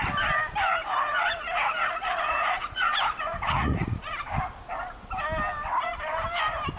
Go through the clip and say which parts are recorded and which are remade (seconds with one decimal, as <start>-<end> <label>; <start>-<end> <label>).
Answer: 0.0-1.1 recorded; 1.1-4.2 remade; 4.2-6.8 recorded